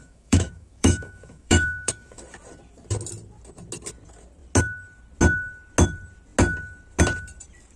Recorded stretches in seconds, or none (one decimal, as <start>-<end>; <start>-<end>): 2.2-7.8